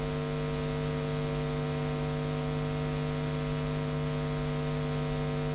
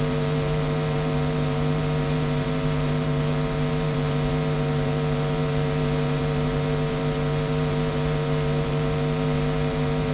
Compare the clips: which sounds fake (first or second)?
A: second